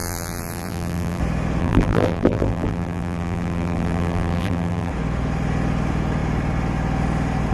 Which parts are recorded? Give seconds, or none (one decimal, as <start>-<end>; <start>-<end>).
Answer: 1.2-1.6; 4.9-7.5